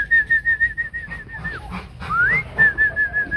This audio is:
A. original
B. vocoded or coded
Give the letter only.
A